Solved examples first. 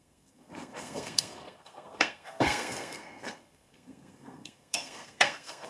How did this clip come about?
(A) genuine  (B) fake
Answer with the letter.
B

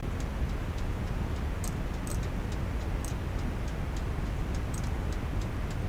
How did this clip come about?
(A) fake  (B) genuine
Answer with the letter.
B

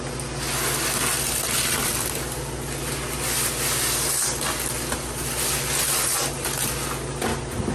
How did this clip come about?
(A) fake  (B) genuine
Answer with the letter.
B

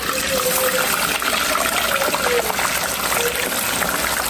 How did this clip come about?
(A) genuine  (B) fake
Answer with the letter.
A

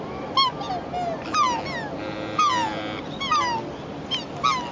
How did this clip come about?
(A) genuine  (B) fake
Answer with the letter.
A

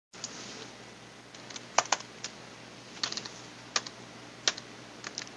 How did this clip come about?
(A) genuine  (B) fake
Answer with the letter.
A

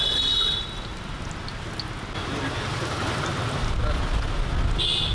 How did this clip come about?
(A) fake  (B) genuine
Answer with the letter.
B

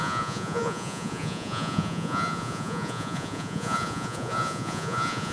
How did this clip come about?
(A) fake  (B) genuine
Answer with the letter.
A